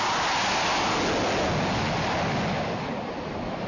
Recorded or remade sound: recorded